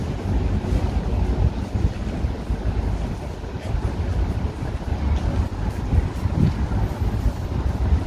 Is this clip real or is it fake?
real